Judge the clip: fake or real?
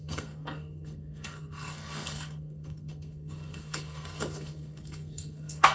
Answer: fake